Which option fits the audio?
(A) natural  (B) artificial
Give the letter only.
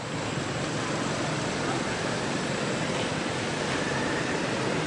A